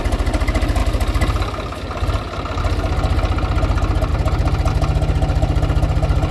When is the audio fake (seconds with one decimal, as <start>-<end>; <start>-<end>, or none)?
none